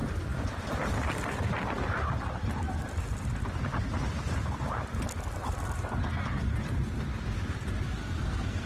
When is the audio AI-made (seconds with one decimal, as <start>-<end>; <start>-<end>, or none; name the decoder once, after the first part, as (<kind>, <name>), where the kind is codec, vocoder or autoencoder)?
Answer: 8.0-8.7 (codec, SNAC)